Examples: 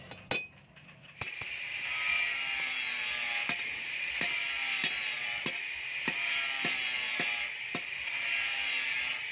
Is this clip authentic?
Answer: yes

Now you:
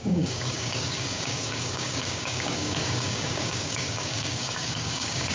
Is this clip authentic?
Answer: no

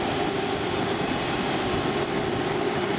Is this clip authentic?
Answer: yes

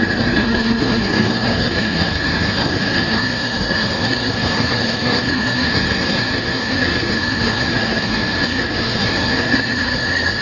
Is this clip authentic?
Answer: no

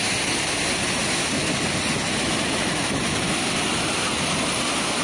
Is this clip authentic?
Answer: yes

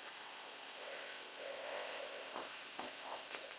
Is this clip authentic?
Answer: no